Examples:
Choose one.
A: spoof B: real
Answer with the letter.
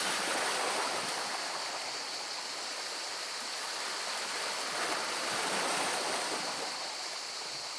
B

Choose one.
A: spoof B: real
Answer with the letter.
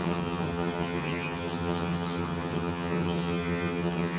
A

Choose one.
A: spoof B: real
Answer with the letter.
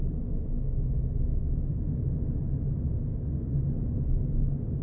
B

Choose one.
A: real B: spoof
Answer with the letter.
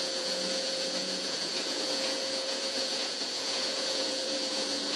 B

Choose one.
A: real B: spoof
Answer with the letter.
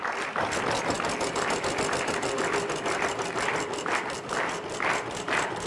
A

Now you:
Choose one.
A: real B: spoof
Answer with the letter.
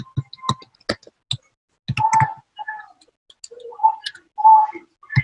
A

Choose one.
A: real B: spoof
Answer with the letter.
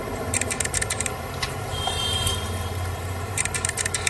B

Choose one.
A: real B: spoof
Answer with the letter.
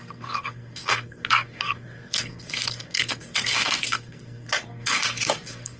B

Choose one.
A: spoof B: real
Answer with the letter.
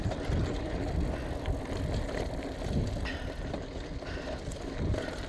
B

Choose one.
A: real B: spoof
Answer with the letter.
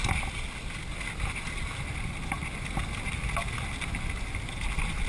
A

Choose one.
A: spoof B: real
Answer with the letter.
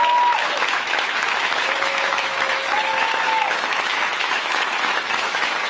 A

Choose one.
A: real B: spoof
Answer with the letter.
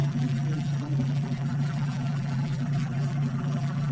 B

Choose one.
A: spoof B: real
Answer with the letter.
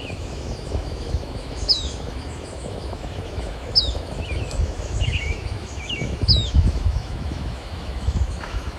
A